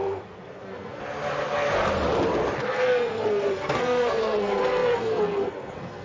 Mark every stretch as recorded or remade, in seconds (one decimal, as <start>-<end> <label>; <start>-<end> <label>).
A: 0.0-1.0 remade; 1.0-2.7 recorded; 2.7-6.0 remade